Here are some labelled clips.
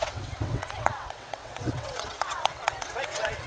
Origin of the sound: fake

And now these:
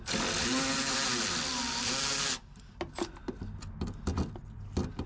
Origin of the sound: real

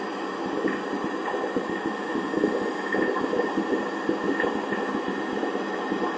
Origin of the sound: real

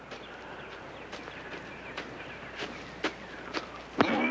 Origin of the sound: real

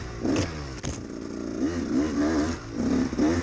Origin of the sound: real